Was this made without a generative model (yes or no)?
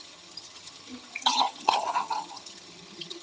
no